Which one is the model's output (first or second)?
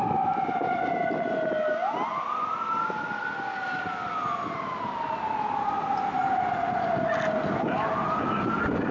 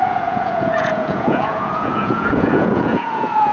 second